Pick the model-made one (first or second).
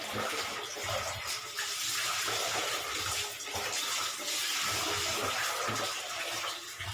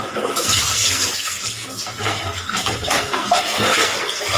second